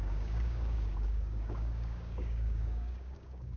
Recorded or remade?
remade